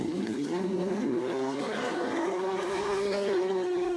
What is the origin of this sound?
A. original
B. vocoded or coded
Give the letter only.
B